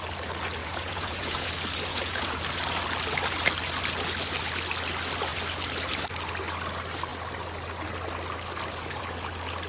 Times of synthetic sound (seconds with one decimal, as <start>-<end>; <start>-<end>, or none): 0.6-1.5; 1.9-2.4